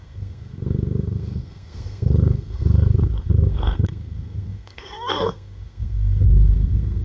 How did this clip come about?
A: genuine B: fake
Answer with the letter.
B